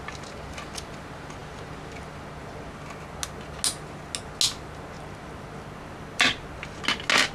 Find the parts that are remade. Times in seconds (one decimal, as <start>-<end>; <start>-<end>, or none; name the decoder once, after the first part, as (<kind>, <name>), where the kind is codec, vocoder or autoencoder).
none